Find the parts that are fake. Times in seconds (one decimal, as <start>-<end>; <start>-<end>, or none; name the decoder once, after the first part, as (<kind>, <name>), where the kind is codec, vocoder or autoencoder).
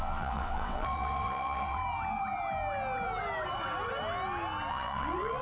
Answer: 0.0-1.8 (vocoder, WaveNeXt); 4.7-5.4